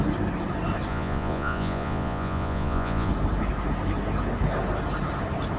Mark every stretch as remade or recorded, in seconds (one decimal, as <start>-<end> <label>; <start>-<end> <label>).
0.0-0.9 recorded; 0.9-3.1 remade; 3.1-5.6 recorded